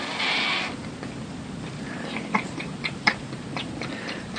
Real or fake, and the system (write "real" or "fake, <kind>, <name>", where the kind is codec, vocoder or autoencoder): fake, vocoder, BigVGAN v2